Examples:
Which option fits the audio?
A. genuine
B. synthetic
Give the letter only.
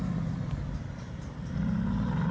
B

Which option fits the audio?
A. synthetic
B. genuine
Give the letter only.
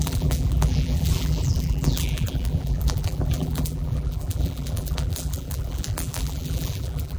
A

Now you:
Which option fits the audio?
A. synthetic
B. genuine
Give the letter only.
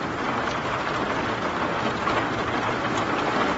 B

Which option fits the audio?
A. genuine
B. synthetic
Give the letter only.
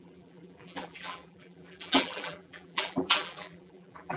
B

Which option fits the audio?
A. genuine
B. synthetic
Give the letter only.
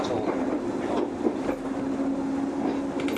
A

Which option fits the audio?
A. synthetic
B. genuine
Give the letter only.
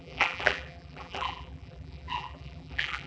A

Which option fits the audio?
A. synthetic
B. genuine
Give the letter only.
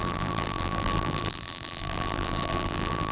A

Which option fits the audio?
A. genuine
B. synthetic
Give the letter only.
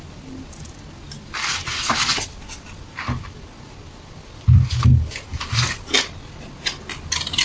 A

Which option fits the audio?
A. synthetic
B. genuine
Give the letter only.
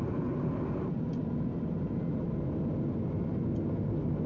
B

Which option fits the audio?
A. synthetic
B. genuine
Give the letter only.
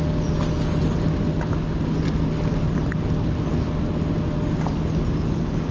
B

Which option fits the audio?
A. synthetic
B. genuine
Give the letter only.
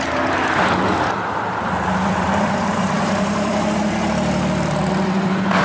A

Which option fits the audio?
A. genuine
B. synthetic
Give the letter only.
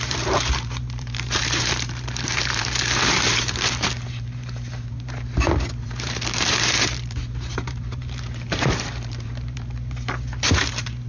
B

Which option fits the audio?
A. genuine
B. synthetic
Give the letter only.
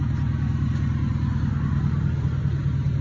A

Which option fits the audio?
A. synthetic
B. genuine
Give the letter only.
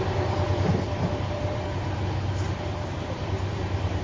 A